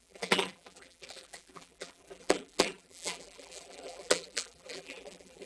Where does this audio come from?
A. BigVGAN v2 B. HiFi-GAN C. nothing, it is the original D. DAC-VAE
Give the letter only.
A